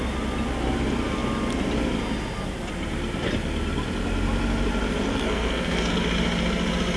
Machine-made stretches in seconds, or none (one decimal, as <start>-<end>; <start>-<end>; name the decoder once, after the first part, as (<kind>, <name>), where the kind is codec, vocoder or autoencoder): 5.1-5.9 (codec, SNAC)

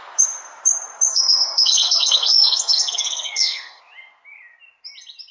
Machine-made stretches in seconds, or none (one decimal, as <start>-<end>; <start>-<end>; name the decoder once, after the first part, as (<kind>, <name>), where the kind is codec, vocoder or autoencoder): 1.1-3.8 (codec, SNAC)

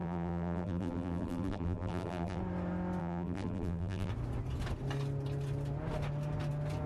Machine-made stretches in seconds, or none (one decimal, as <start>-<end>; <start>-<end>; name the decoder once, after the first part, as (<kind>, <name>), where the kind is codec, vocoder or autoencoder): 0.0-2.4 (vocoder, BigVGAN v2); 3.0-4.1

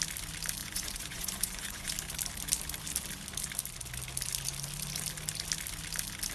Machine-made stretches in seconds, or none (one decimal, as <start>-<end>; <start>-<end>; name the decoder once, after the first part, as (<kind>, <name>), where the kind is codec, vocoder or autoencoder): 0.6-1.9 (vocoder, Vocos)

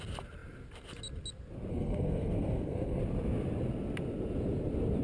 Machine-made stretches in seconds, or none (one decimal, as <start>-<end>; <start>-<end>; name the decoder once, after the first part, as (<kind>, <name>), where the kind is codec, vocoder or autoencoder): 1.7-3.0 (codec, SNAC)